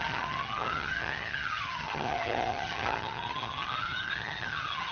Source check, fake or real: fake